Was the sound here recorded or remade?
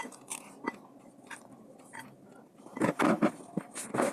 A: recorded